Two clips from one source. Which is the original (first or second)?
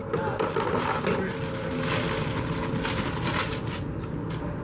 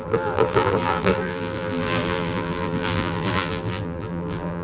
first